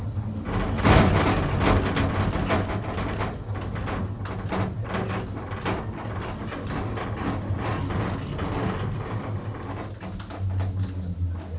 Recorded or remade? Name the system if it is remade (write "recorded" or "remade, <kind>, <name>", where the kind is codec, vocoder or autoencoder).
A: recorded